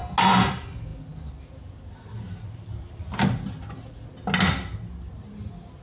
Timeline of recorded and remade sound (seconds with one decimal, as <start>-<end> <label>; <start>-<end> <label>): 0.0-5.8 recorded

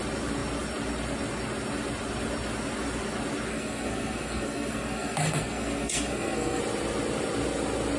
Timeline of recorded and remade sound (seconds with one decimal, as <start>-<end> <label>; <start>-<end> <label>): 0.0-3.5 recorded; 3.5-6.6 remade; 6.6-8.0 recorded

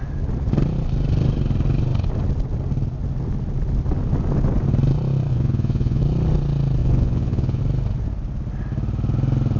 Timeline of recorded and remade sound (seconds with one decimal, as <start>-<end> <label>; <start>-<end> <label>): 0.0-5.3 recorded; 5.3-6.0 remade; 6.0-6.8 recorded; 6.8-7.6 remade; 7.6-9.6 recorded

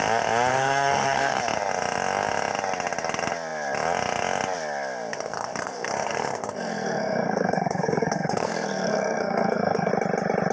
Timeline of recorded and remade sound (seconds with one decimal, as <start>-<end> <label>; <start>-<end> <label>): 0.0-0.5 recorded; 0.5-1.4 remade; 1.4-5.1 recorded; 5.1-9.9 remade; 9.9-10.5 recorded